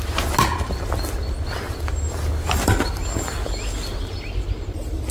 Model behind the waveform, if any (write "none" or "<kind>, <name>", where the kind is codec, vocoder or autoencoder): none